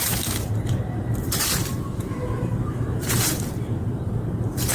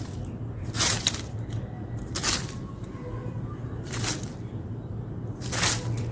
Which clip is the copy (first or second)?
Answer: first